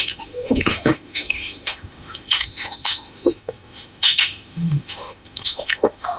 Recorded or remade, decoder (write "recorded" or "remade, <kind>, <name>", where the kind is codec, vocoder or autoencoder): remade, autoencoder, DAC-VAE